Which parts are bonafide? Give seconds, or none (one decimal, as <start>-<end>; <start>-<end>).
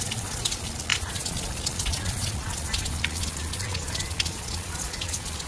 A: none